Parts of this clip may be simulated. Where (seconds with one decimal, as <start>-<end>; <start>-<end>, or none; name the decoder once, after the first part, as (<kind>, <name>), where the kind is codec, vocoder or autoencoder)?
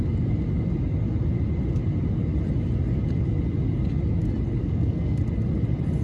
4.6-5.2 (codec, SNAC)